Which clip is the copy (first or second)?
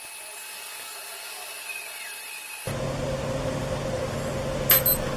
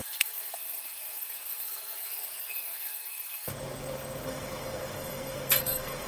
second